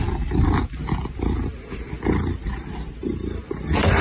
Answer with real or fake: real